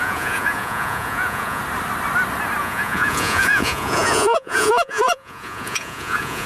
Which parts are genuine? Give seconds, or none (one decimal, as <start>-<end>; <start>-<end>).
1.6-2.6